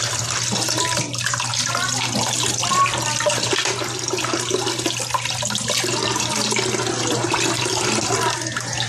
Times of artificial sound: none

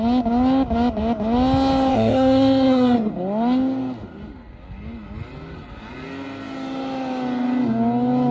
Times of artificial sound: 1.9-3.1

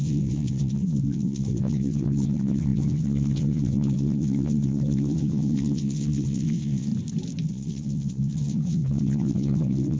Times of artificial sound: 0.0-6.9; 7.5-10.0